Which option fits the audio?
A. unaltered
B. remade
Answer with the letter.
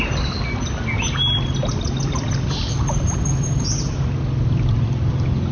A